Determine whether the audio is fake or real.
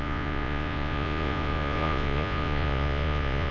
fake